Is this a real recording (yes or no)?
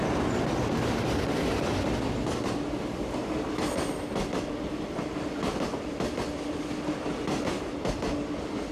yes